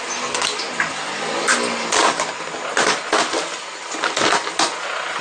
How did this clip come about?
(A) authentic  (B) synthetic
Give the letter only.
A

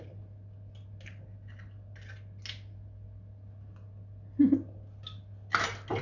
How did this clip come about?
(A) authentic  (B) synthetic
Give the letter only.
A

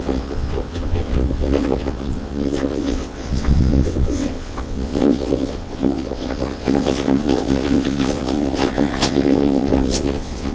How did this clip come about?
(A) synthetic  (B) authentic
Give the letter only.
A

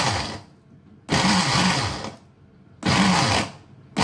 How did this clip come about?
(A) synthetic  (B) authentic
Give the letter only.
B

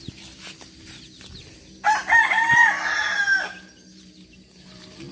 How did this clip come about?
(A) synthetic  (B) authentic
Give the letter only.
B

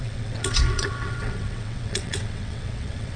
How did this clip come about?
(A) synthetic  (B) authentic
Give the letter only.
A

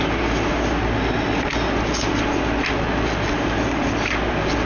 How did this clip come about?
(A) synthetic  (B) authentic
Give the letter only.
B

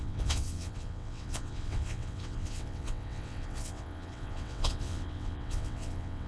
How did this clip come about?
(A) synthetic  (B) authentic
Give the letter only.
A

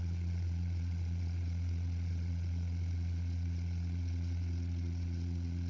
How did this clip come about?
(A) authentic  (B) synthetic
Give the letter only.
B